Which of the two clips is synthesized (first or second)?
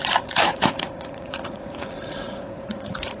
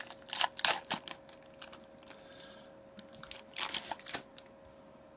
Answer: first